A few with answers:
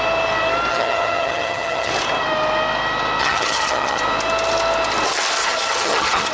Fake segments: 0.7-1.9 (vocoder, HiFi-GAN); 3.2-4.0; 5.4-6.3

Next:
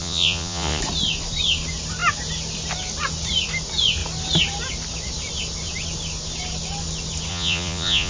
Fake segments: 0.0-0.8 (vocoder, Vocos); 7.3-8.1

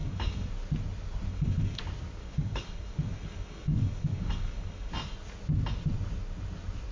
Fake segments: 0.0-0.5 (codec, DAC); 1.3-1.8; 2.2-4.9

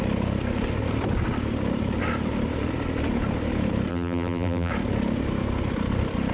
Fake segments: 3.9-4.7 (vocoder, BigVGAN v2)